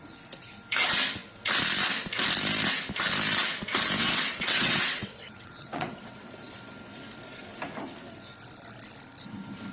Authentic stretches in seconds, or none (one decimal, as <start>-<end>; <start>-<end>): 0.0-4.0; 6.3-9.7